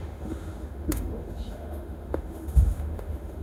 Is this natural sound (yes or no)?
no